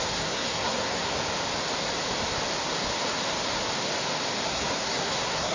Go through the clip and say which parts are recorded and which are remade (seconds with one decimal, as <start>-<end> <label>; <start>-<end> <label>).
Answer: 0.0-1.2 remade; 1.2-4.5 recorded; 4.5-5.5 remade